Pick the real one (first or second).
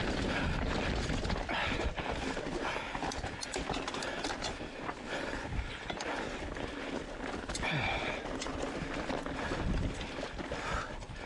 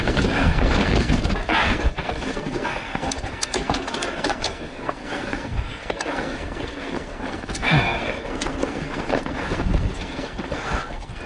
first